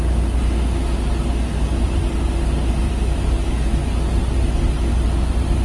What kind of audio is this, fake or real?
real